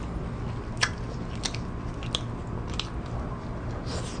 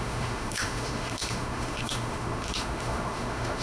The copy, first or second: second